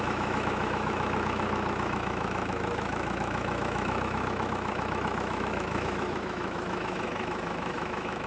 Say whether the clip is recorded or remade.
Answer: remade